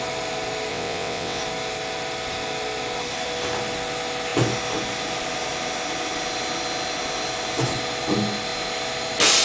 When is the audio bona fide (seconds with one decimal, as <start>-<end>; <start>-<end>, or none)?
0.0-0.7; 1.4-9.4